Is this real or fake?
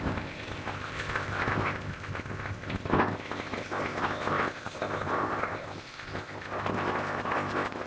fake